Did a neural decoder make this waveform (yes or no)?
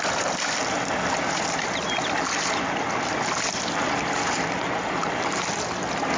no